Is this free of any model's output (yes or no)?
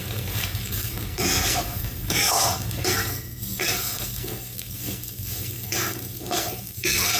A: no